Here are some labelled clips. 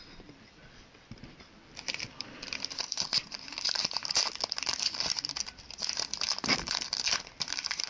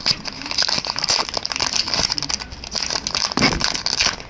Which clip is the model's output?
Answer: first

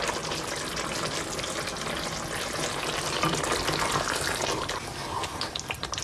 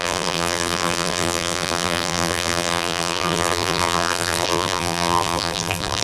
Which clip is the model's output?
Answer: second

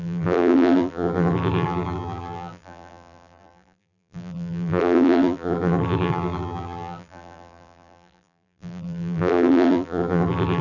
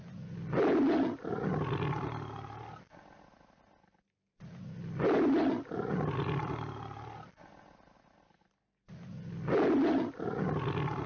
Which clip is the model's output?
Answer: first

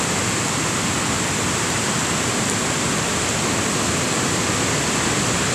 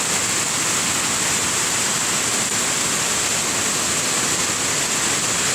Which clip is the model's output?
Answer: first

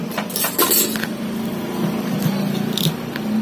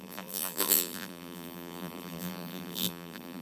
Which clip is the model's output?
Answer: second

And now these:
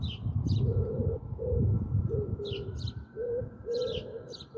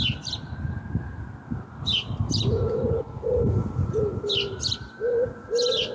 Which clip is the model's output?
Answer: first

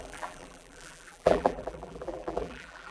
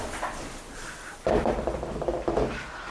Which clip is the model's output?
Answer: first